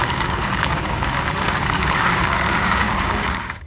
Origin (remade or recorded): remade